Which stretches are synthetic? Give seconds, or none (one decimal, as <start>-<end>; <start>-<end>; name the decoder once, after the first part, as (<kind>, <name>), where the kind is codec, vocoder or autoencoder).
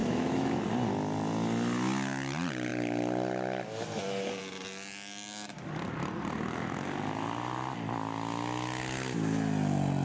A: 0.0-0.6 (autoencoder, DAC-VAE)